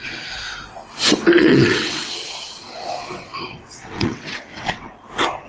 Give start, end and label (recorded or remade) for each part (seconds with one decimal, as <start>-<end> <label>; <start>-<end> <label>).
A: 0.0-1.4 recorded; 1.4-2.3 remade; 2.3-3.1 recorded; 3.1-4.9 remade; 4.9-5.5 recorded